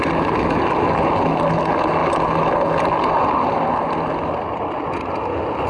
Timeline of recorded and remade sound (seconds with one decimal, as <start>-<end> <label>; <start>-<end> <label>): 0.0-5.7 recorded